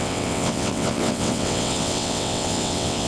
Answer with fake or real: fake